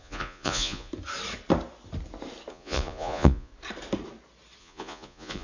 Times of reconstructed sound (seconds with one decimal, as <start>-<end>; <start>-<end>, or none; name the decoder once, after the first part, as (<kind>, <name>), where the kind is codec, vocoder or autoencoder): 0.0-0.9 (vocoder, Vocos); 2.5-3.5; 4.6-5.4